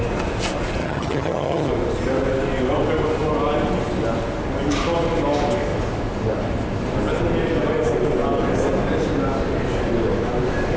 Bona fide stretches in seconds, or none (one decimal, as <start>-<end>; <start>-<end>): 0.0-0.8; 1.7-10.8